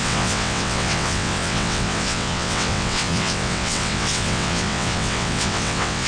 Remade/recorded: remade